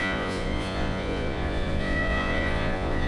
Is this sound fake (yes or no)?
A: yes